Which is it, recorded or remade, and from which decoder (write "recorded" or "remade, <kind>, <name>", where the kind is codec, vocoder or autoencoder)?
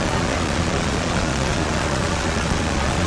remade, vocoder, Vocos